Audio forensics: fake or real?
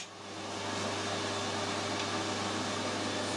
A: real